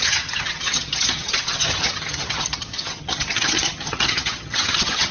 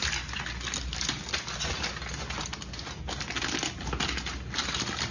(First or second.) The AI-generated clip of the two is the first